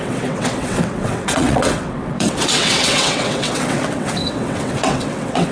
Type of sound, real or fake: fake